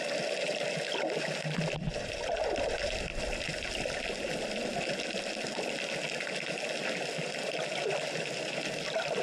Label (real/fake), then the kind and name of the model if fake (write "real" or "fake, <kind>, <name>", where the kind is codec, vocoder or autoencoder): real